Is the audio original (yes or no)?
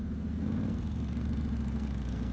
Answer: no